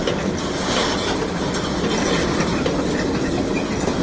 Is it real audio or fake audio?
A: real